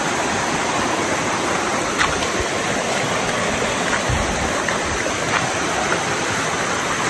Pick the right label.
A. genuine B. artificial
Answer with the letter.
A